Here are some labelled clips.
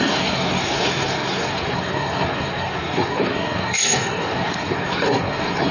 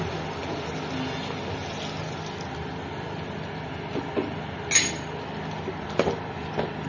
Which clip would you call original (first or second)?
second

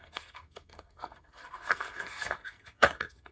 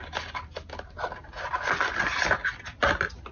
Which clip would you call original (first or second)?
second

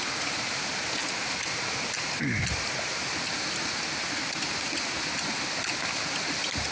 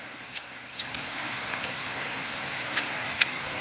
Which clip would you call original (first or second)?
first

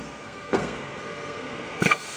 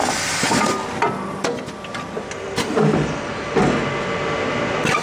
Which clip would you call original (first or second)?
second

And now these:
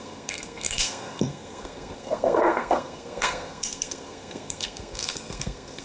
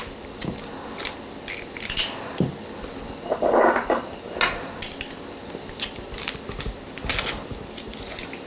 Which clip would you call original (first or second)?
second